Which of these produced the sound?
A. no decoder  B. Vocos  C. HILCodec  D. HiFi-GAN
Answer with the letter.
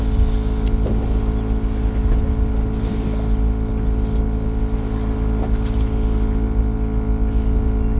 A